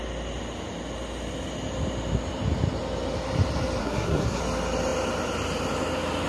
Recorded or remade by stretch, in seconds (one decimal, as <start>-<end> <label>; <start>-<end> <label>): 0.0-3.8 recorded; 3.8-4.4 remade; 4.4-6.3 recorded